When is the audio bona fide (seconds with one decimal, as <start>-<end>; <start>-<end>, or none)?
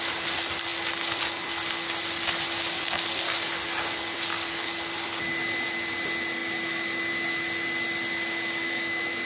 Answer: 0.0-8.6